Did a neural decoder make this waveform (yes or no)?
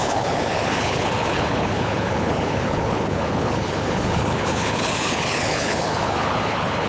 yes